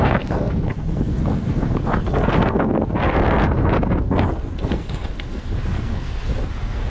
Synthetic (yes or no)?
yes